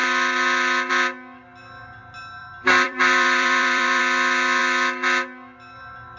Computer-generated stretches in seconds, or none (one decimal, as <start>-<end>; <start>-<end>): 2.4-4.0